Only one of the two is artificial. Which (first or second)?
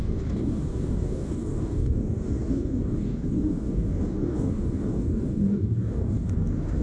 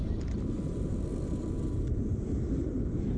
first